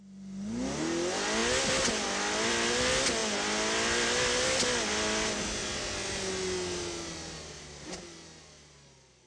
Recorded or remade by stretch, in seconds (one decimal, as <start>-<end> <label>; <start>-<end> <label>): 0.0-9.3 recorded